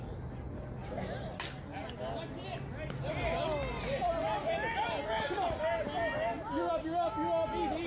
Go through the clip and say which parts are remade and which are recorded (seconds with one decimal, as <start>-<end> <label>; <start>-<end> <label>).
0.0-0.8 recorded; 0.8-1.6 remade; 1.6-7.9 recorded